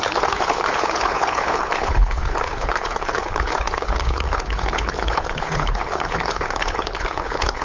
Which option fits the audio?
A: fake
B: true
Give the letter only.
A